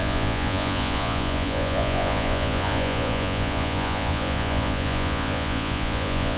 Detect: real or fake fake